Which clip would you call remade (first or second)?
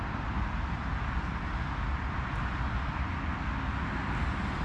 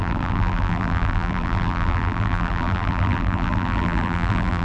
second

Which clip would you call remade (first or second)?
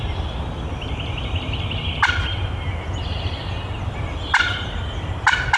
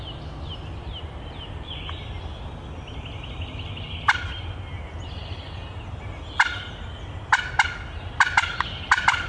first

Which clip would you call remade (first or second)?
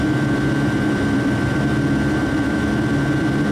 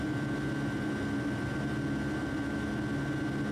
first